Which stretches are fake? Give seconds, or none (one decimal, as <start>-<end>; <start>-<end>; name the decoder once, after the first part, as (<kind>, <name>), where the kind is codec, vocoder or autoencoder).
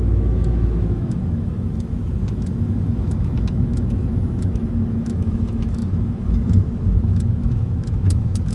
0.0-8.5 (autoencoder, DAC-VAE)